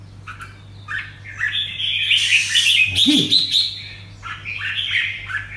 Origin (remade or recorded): recorded